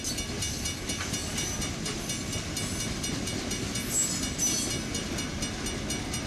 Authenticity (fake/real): real